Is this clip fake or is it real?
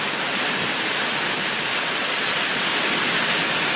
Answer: real